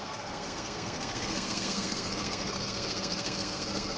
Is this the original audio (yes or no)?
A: no